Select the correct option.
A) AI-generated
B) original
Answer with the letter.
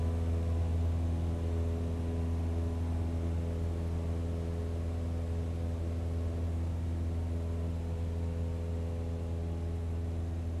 B